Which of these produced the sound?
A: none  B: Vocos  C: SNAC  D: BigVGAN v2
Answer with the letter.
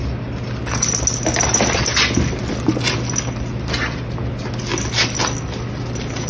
A